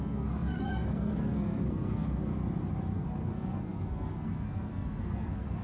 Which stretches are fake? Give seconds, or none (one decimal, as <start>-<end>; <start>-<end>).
0.0-2.3; 2.9-5.6